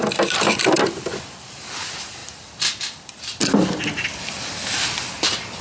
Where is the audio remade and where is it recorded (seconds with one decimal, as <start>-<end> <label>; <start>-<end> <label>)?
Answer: 0.0-5.6 recorded